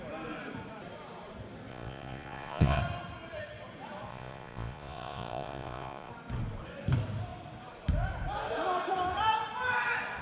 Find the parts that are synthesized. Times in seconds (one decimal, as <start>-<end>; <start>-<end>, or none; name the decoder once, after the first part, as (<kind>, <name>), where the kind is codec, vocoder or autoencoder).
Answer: 1.7-2.8 (vocoder, Vocos); 4.1-6.1